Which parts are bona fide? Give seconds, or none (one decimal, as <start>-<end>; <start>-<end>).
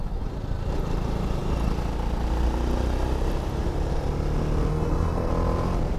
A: 0.0-4.7; 5.3-6.0